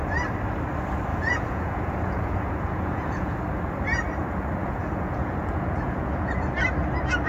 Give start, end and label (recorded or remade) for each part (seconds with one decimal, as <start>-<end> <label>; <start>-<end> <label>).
0.0-1.1 recorded; 1.1-3.4 remade; 3.4-4.6 recorded; 4.6-6.3 remade; 6.3-7.3 recorded